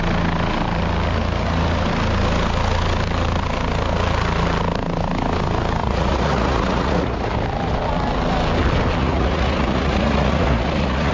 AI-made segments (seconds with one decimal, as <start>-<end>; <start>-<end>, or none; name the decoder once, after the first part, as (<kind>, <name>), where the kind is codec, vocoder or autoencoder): 5.8-7.3 (vocoder, Vocos); 9.0-11.1

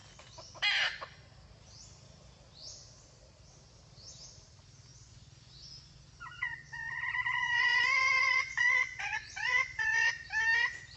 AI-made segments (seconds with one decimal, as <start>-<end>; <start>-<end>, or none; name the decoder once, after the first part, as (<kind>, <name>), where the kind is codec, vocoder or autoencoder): 4.9-10.1 (vocoder, Vocos)

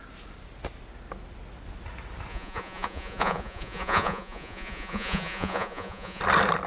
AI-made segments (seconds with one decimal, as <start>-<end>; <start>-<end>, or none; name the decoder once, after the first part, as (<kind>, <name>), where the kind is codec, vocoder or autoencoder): 2.3-6.2 (vocoder, Vocos)

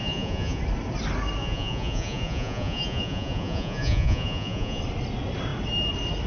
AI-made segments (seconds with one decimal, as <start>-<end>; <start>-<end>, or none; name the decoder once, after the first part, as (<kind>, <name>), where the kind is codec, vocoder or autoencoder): 0.0-0.6 (vocoder, Vocos); 1.4-4.8

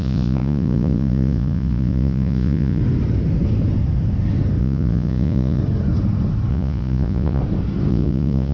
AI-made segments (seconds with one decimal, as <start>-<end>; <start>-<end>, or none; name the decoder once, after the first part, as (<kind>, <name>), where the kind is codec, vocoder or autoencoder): 0.0-2.8 (vocoder, Vocos); 4.6-5.6; 6.5-7.4; 7.9-8.5

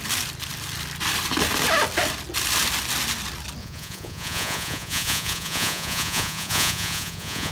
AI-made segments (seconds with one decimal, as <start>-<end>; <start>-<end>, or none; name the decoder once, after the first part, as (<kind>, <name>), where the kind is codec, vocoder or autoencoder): 3.6-7.5 (vocoder, Vocos)

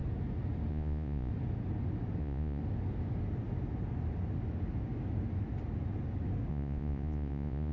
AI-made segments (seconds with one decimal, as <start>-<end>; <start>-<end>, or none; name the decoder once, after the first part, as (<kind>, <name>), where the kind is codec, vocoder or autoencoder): 0.7-1.3 (vocoder, Vocos); 2.2-2.6; 6.5-7.7